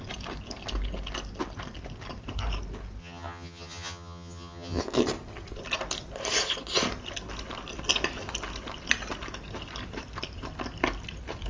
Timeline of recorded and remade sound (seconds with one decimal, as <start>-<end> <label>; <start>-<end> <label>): 0.0-3.0 recorded; 3.0-4.8 remade; 4.8-11.5 recorded